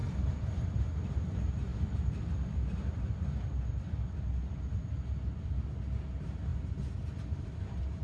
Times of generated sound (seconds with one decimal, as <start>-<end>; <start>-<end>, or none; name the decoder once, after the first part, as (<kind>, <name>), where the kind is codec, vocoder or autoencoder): 0.0-0.6 (vocoder, BigVGAN v2)